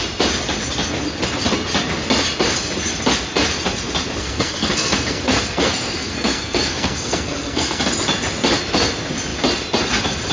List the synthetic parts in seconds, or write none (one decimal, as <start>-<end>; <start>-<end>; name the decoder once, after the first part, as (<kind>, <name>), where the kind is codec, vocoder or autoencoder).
4.2-7.9 (codec, SNAC)